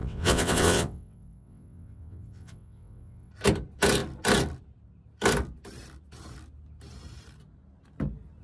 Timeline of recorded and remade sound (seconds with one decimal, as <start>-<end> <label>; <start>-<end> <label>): 0.0-3.3 remade; 3.3-8.4 recorded